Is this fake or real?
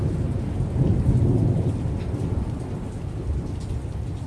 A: real